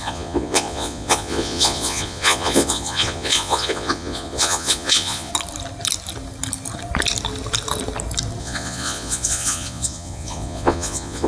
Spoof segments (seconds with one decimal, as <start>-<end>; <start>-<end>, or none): 0.0-5.3; 8.4-11.3